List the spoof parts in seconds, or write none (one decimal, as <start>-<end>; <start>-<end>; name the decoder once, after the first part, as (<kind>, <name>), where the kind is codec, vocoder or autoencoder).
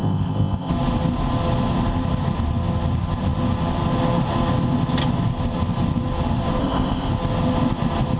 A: 0.0-0.7 (codec, ZipCodec); 6.6-7.1